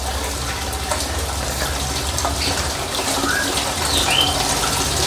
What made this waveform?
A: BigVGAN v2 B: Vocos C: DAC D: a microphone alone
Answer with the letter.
D